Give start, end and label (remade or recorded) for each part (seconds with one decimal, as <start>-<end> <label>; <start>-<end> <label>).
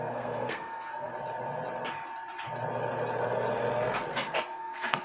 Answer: 0.0-1.1 remade; 1.1-4.1 recorded; 4.1-5.0 remade